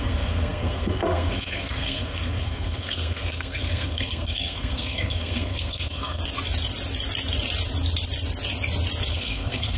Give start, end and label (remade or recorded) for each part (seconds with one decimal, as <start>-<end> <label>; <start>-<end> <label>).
0.0-6.2 remade; 6.2-9.1 recorded; 9.1-9.8 remade